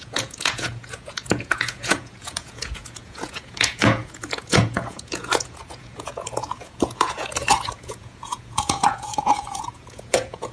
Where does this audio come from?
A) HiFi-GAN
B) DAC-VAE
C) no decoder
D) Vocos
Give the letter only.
D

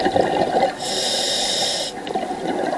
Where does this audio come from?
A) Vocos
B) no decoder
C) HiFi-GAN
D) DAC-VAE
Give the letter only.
B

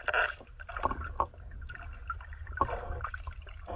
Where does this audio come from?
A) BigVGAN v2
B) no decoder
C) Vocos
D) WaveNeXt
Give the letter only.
B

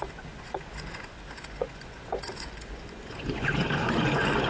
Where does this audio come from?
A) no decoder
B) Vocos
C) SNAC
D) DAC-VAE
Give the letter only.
B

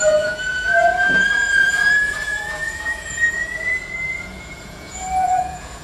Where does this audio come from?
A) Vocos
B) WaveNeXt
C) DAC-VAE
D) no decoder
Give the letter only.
A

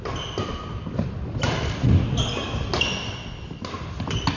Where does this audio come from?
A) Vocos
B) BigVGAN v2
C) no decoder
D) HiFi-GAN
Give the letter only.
C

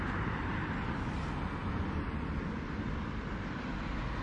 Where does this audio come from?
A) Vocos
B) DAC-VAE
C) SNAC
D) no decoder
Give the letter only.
D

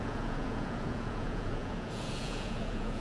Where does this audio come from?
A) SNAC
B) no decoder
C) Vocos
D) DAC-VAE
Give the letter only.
C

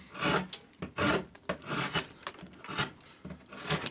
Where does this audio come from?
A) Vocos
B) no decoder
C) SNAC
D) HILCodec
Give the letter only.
B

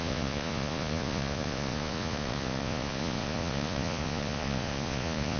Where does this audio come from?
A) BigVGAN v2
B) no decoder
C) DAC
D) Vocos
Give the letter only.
D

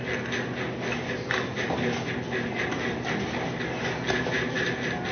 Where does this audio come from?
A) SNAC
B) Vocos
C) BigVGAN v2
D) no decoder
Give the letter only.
D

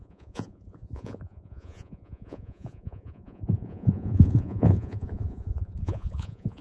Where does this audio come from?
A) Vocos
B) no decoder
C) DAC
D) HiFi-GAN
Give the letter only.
A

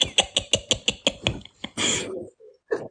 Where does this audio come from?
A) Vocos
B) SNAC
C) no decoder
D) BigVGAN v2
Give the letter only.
C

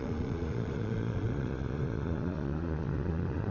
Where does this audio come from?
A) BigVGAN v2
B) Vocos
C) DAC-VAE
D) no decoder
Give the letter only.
B